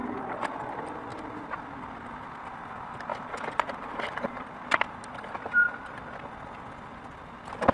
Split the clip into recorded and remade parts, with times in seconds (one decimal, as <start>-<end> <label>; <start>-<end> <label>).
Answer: 0.0-3.1 recorded; 3.1-4.5 remade; 4.5-7.7 recorded